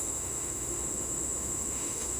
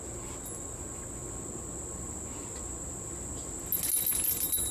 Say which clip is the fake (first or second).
first